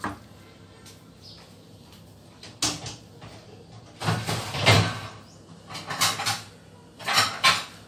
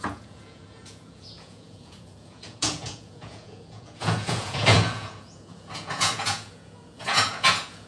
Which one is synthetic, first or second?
second